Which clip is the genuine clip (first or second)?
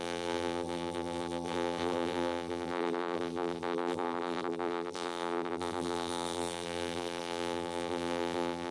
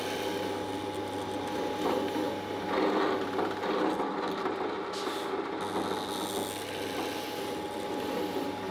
second